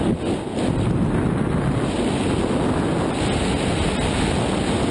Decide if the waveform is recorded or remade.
recorded